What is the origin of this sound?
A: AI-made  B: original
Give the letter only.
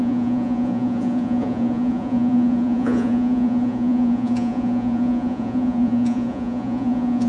A